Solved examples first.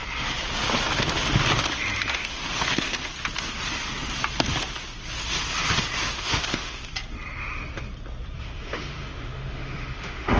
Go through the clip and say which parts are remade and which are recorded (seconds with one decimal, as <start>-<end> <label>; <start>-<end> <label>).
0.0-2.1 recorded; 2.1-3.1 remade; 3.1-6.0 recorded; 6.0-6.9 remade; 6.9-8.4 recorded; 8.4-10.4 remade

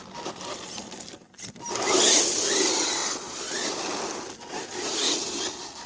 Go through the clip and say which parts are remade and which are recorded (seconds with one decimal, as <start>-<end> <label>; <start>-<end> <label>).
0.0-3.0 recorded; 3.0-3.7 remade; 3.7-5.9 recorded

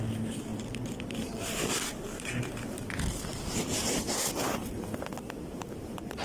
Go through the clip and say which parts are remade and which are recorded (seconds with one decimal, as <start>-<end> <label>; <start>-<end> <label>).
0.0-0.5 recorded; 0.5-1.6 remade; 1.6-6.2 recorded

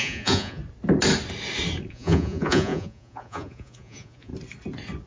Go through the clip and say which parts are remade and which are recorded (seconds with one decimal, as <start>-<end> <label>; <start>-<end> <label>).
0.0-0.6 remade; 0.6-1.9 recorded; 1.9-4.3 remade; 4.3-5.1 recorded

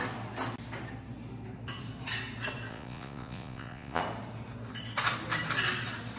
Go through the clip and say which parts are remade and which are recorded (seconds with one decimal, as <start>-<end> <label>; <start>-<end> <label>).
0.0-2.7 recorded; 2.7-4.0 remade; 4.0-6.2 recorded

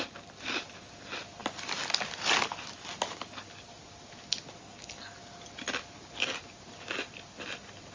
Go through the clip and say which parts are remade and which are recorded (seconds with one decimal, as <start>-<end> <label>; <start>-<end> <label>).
0.0-4.6 recorded; 4.6-5.1 remade; 5.1-7.9 recorded